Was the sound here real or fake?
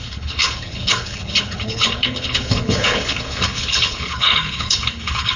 fake